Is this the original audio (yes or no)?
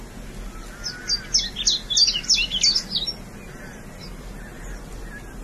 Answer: yes